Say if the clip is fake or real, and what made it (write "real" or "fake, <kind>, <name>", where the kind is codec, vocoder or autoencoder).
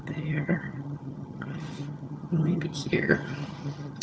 fake, vocoder, HiFi-GAN